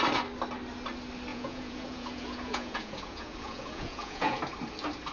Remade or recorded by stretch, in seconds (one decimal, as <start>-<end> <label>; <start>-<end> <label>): 0.0-1.3 recorded; 1.3-4.4 remade; 4.4-5.1 recorded